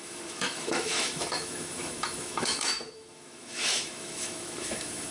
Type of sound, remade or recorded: remade